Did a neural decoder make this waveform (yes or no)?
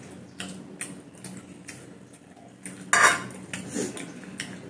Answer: no